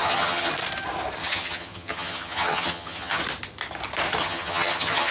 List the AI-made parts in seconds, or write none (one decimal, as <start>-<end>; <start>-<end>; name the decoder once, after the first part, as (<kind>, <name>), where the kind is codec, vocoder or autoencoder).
0.0-0.5 (vocoder, HiFi-GAN); 1.2-3.2; 4.2-5.1